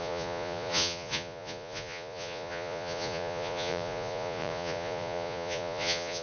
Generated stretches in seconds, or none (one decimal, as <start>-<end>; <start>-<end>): 0.0-6.2